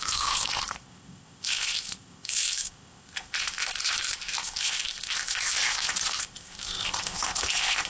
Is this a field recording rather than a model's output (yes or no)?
no